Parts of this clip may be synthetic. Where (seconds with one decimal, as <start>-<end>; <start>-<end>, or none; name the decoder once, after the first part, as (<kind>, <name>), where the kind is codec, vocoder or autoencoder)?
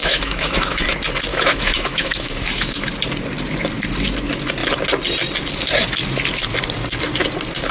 0.0-0.8 (autoencoder, DAC-VAE); 1.3-2.9